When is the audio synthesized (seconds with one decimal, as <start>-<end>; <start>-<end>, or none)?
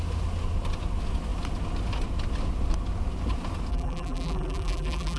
3.7-5.2